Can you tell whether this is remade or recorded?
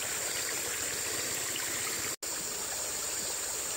recorded